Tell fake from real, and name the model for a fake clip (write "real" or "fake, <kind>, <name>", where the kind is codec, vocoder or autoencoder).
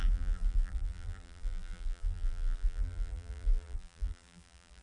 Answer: fake, vocoder, BigVGAN v2